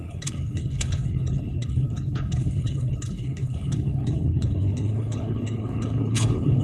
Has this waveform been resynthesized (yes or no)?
yes